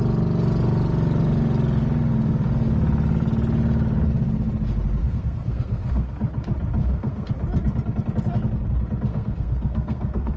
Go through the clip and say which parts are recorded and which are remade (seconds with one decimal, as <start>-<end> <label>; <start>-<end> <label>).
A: 0.0-5.0 recorded; 5.0-6.2 remade; 6.2-6.8 recorded; 6.8-7.3 remade; 7.3-9.1 recorded; 9.1-10.4 remade